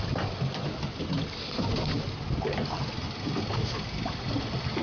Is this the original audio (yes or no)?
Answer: yes